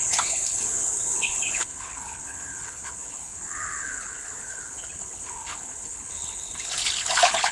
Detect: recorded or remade remade